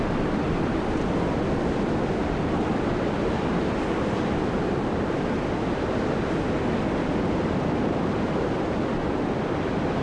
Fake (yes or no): no